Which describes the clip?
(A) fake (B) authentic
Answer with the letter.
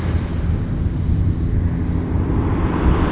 B